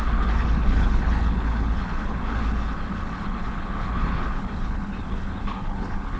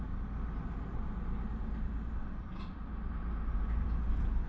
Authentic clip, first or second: second